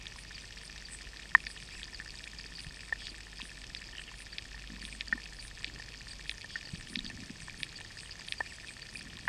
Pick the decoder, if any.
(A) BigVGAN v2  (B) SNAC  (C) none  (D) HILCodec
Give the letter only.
C